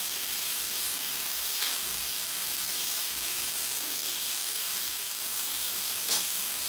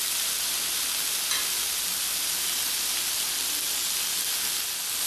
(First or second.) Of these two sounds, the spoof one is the first